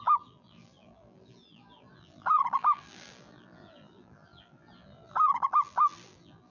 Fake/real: fake